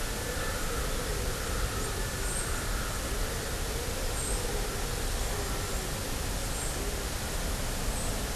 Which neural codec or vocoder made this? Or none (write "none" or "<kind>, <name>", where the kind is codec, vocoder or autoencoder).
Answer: none